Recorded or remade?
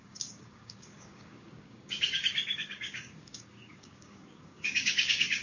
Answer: remade